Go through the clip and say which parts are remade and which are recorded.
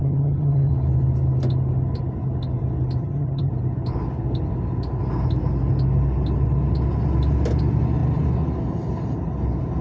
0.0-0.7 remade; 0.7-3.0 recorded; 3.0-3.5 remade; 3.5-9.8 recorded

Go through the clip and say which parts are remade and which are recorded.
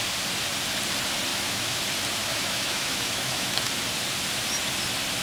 0.0-1.3 recorded; 1.3-1.8 remade; 1.8-2.2 recorded; 2.2-3.7 remade; 3.7-5.2 recorded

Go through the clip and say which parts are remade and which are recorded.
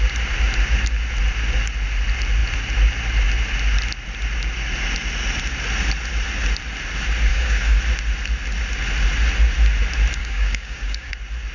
0.0-7.3 recorded; 7.3-7.8 remade; 7.8-10.2 recorded; 10.2-11.1 remade; 11.1-11.5 recorded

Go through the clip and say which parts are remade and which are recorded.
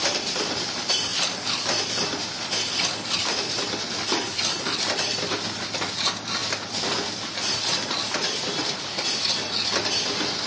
0.0-1.1 remade; 1.1-3.2 recorded; 3.2-6.4 remade; 6.4-10.5 recorded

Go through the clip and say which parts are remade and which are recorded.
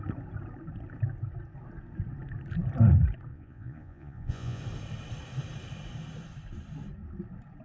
0.0-3.3 recorded; 3.3-4.6 remade; 4.6-7.6 recorded